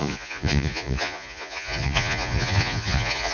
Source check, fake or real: fake